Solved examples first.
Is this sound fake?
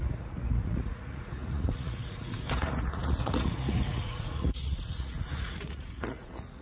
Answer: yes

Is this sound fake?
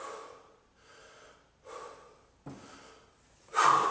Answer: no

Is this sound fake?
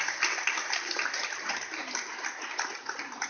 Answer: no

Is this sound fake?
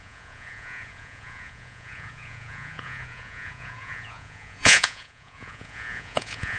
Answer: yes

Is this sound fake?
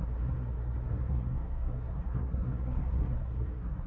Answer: yes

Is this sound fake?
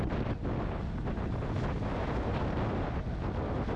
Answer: no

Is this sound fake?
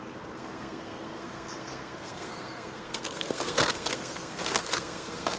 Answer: yes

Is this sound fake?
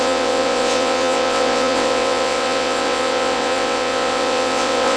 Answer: yes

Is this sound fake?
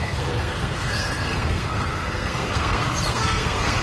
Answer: yes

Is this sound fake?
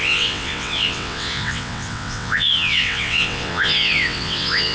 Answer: yes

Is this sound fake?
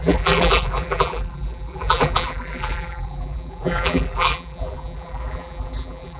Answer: yes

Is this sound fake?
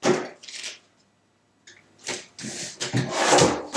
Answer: no